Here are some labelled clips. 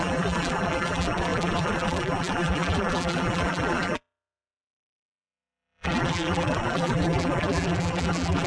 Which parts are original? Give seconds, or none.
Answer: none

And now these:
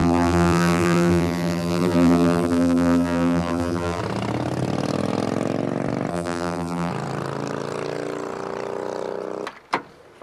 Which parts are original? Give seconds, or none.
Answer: 4.0-6.1; 6.9-10.2

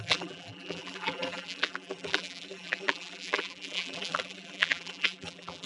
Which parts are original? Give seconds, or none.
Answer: none

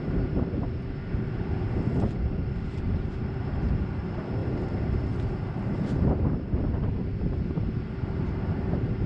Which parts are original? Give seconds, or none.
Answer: 1.0-2.8

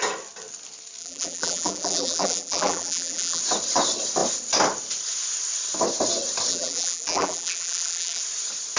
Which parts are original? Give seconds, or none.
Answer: 0.0-1.0; 3.4-6.5; 8.2-8.8

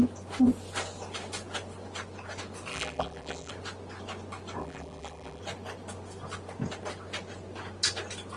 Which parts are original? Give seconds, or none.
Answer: 0.0-2.7; 3.5-4.6; 5.4-8.4

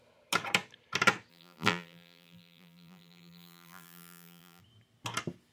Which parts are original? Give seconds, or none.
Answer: 0.0-1.3; 4.6-5.5